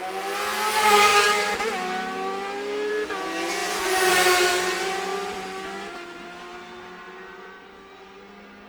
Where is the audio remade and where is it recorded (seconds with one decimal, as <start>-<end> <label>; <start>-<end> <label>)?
0.0-8.7 recorded